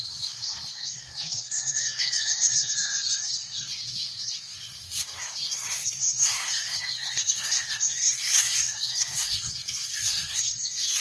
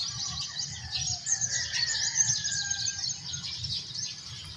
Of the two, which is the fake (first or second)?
first